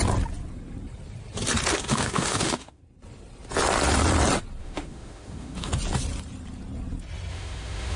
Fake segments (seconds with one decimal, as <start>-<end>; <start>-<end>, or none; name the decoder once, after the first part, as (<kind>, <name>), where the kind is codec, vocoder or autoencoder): 1.7-2.8 (autoencoder, DAC-VAE); 4.6-5.7; 7.3-8.0